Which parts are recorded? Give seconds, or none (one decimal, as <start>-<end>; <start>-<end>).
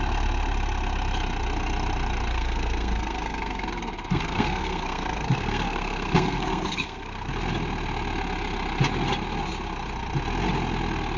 0.0-2.3; 7.3-11.2